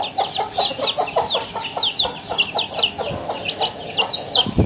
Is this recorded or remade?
recorded